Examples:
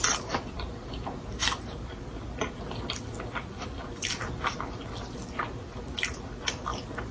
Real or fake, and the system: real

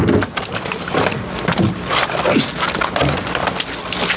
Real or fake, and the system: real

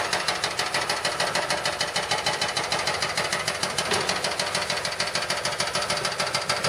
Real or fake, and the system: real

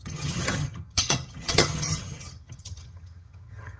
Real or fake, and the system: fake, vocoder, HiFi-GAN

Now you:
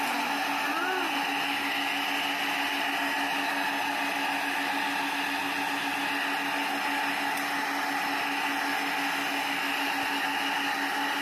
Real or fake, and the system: real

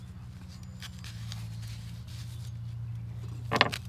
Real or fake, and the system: real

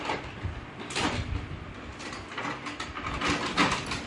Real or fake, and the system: real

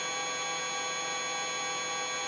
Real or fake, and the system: real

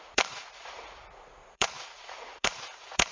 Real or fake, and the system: fake, vocoder, Vocos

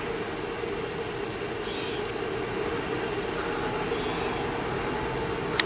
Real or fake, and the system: real